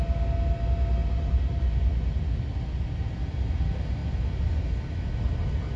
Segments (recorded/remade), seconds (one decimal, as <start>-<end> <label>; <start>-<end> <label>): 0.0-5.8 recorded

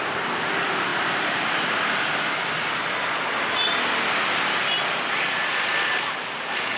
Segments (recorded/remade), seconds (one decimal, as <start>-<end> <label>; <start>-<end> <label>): 0.0-6.8 recorded

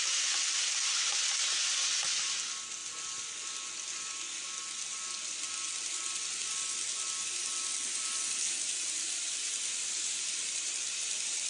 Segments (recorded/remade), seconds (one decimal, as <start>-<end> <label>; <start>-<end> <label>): 0.0-2.8 recorded; 2.8-4.5 remade; 4.5-11.5 recorded

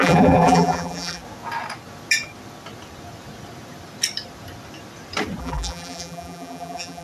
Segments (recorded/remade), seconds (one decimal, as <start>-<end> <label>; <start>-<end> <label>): 0.0-1.2 remade; 1.2-5.4 recorded; 5.4-7.0 remade

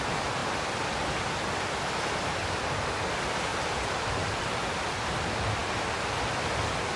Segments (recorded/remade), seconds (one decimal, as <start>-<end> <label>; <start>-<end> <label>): 0.0-3.5 recorded; 3.5-4.4 remade; 4.4-7.0 recorded

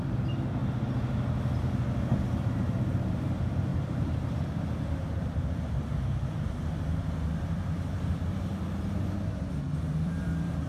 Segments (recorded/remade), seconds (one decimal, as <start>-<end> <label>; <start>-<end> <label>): 0.0-0.6 remade; 0.6-2.9 recorded; 2.9-8.5 remade; 8.5-9.8 recorded; 9.8-10.7 remade

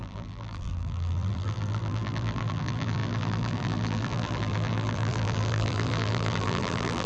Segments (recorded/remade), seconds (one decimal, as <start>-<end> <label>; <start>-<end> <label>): 0.0-7.1 remade

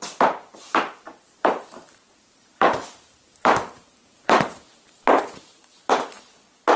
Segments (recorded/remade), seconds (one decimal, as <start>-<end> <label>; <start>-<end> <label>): 0.0-1.3 recorded; 1.3-4.8 remade; 4.8-6.8 recorded